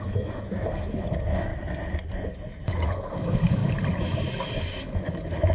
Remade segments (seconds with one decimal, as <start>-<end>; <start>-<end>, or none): 0.0-1.5; 2.1-3.6; 4.7-5.5